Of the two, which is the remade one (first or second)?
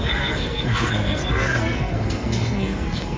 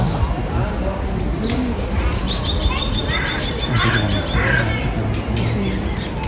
first